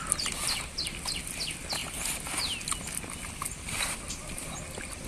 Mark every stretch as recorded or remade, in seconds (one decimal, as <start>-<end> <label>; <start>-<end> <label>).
0.0-5.1 recorded